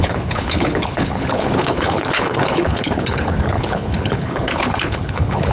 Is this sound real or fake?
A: fake